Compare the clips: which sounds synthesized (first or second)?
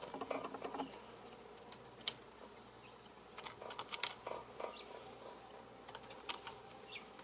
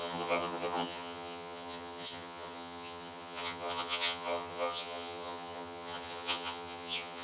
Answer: second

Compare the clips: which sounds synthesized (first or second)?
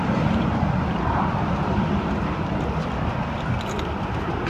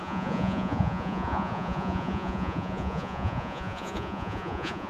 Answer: second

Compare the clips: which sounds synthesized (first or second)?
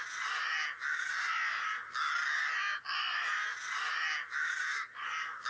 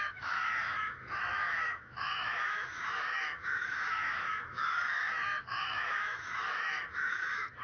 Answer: second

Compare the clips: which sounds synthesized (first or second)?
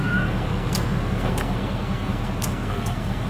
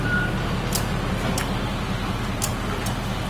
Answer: first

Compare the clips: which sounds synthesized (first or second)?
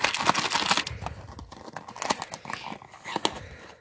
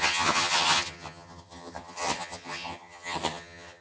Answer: second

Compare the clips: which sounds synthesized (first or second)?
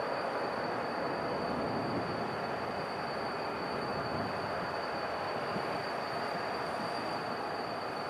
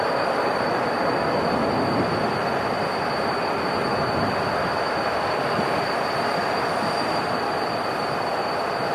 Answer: second